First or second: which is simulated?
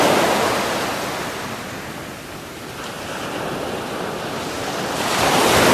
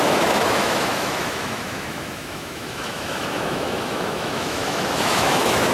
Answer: second